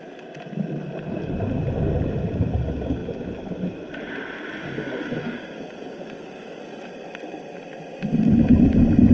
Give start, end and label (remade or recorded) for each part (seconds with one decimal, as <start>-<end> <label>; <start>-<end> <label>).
0.0-4.6 recorded; 4.6-6.6 remade; 6.6-9.1 recorded